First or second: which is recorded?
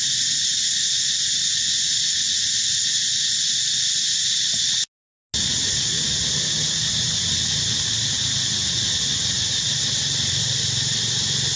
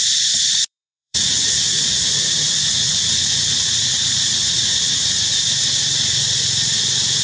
first